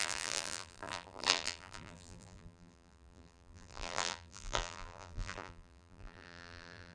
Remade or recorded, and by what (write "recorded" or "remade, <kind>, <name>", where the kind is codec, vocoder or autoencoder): remade, vocoder, BigVGAN v2